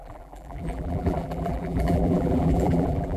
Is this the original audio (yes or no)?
no